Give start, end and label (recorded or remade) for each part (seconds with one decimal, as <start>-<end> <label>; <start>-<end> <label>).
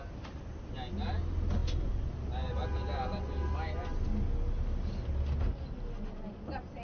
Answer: 0.0-6.8 recorded